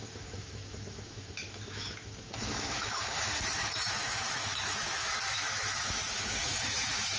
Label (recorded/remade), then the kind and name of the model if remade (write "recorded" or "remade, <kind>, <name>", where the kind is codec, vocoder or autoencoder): remade, autoencoder, DAC-VAE